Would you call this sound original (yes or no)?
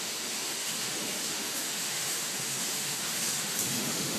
no